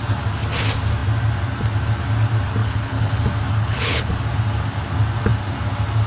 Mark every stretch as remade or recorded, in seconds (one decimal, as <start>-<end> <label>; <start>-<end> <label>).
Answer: 0.0-2.6 recorded; 2.6-3.2 remade; 3.2-3.6 recorded; 3.6-4.1 remade; 4.1-6.1 recorded

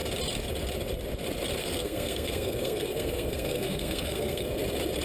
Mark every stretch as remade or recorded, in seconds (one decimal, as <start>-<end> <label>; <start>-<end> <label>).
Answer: 0.0-1.6 recorded; 1.6-4.6 remade; 4.6-5.0 recorded